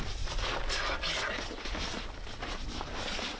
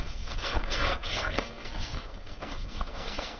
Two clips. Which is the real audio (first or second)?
first